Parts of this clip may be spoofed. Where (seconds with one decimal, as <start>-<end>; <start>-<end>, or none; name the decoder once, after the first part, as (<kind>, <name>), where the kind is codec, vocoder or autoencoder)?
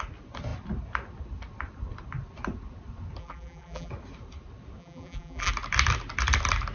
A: 3.2-3.9 (vocoder, BigVGAN v2); 4.8-5.5